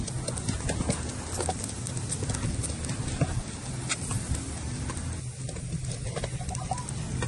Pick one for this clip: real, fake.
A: real